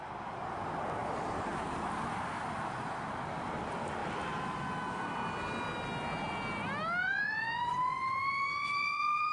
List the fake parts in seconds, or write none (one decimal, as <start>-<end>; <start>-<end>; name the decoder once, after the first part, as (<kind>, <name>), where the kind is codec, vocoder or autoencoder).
7.0-9.3 (vocoder, Vocos)